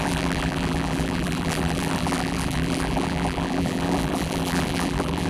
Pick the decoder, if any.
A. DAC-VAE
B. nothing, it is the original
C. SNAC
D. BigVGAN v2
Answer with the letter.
D